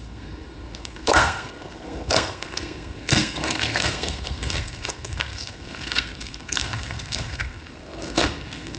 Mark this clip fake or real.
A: fake